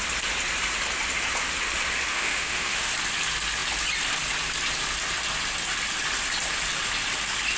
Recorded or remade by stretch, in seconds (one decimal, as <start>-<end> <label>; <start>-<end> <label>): 0.0-2.1 recorded; 2.1-2.9 remade; 2.9-7.6 recorded